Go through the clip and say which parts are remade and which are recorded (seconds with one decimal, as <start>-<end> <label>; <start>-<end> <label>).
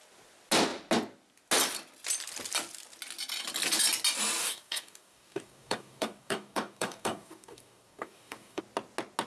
0.0-4.4 recorded; 4.4-8.6 remade; 8.6-9.3 recorded